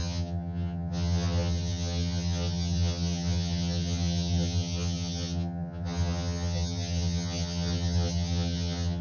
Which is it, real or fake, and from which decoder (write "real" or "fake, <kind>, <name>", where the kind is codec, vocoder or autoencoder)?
fake, vocoder, HiFi-GAN